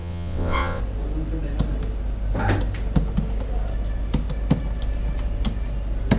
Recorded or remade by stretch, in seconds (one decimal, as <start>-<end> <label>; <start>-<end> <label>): 0.0-0.8 remade; 0.8-6.2 recorded

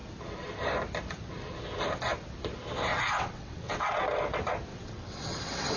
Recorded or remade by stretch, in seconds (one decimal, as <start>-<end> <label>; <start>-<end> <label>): 0.0-2.9 recorded; 2.9-4.0 remade; 4.0-4.7 recorded; 4.7-5.8 remade

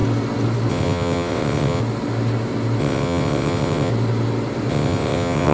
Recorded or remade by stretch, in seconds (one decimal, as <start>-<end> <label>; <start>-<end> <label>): 0.0-0.7 recorded; 0.7-1.8 remade; 1.8-2.8 recorded; 2.8-3.9 remade; 3.9-4.7 recorded; 4.7-5.5 remade